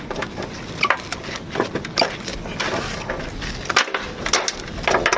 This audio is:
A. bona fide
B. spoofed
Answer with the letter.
A